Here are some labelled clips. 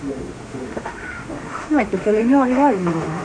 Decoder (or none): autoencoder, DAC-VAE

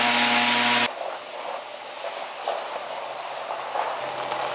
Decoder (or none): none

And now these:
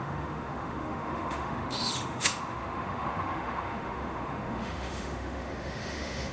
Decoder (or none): autoencoder, DAC-VAE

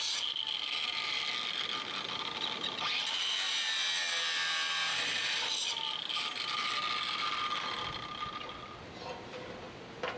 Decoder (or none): none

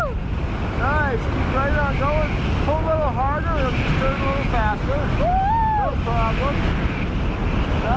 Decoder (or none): none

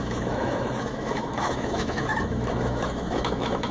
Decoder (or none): autoencoder, DAC-VAE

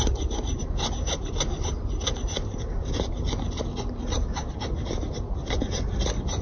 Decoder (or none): none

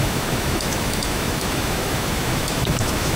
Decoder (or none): autoencoder, DAC-VAE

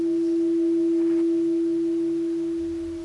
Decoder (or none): none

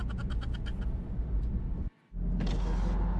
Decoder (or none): none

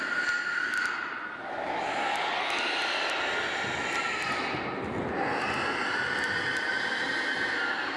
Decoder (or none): none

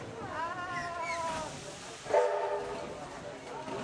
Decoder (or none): none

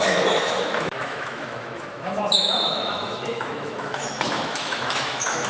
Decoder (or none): autoencoder, DAC-VAE